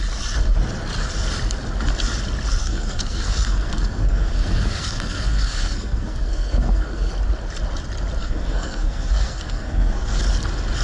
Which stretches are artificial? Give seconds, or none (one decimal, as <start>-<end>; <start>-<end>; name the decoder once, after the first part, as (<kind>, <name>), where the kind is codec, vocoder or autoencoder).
2.6-7.1 (codec, SNAC); 8.2-10.2